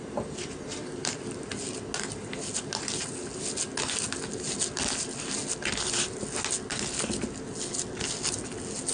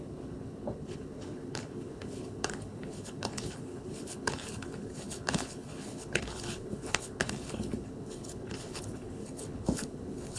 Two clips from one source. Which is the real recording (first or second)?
first